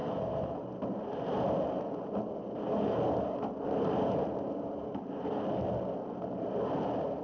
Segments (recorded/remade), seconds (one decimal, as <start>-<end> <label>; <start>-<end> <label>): 0.0-0.6 remade; 0.6-7.2 recorded

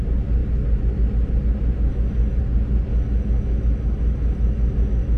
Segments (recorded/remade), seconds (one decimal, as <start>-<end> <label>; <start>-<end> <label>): 0.0-1.9 recorded; 1.9-2.4 remade; 2.4-2.9 recorded; 2.9-5.2 remade

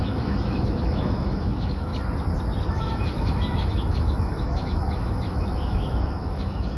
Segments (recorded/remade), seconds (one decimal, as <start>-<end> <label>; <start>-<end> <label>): 0.0-1.9 remade; 1.9-2.7 recorded; 2.7-6.8 remade

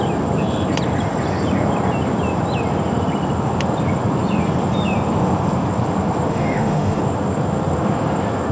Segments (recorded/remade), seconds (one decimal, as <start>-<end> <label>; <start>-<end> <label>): 0.0-6.3 recorded; 6.3-7.0 remade; 7.0-8.5 recorded

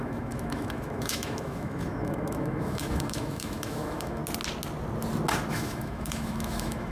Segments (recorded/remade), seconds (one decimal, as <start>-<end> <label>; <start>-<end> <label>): 0.0-4.2 remade; 4.2-5.5 recorded; 5.5-6.9 remade

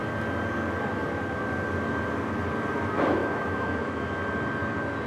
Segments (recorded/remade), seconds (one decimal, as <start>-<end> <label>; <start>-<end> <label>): 0.0-3.2 recorded; 3.2-4.1 remade; 4.1-5.1 recorded

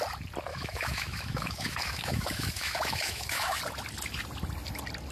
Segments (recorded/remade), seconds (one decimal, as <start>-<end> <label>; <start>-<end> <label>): 0.0-0.5 recorded; 0.5-3.6 remade; 3.6-5.1 recorded

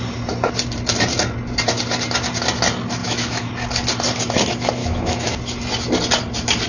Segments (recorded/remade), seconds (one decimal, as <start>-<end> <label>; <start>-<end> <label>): 0.0-3.0 recorded; 3.0-3.5 remade; 3.5-4.8 recorded; 4.8-5.3 remade; 5.3-6.7 recorded